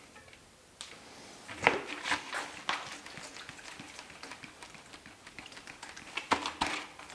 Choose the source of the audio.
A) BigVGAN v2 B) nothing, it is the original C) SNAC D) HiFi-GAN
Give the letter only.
B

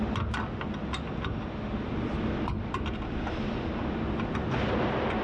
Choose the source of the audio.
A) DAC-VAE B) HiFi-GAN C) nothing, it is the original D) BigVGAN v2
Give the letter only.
C